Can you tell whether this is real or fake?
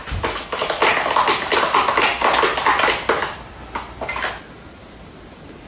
real